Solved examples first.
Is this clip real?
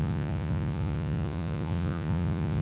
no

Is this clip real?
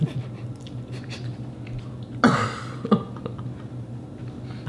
yes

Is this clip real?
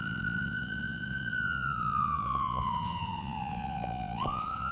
no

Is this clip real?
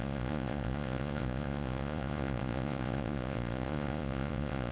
no